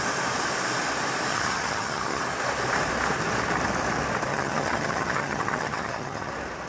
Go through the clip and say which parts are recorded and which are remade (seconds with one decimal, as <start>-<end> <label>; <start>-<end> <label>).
0.0-1.3 recorded; 1.3-2.2 remade; 2.2-4.3 recorded; 4.3-6.3 remade; 6.3-6.7 recorded